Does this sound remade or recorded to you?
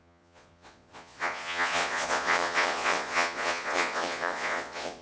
remade